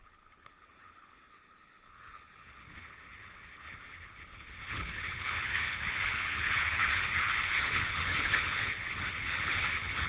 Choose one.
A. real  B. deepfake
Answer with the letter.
B